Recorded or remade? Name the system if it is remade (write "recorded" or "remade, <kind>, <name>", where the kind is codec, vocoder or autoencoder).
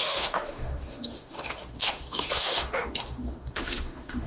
remade, autoencoder, DAC-VAE